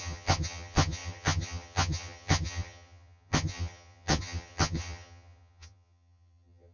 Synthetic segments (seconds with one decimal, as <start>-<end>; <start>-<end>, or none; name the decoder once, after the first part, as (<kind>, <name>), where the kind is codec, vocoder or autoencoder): 0.0-6.7 (vocoder, HiFi-GAN)